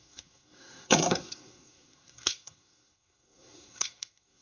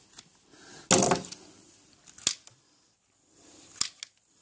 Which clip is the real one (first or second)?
second